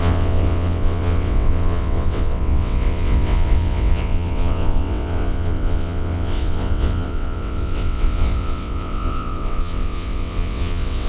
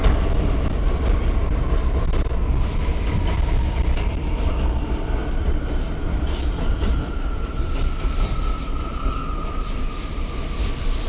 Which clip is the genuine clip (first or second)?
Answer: second